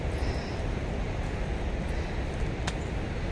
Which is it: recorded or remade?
recorded